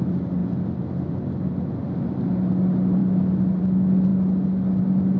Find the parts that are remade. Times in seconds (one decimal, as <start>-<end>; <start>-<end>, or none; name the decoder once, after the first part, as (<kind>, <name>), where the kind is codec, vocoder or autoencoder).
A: none